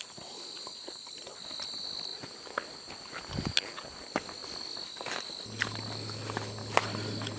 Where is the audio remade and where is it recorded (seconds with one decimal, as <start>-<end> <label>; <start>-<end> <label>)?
0.0-7.4 recorded